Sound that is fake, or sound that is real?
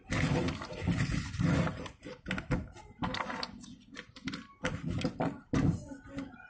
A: real